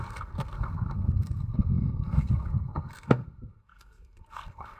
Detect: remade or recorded remade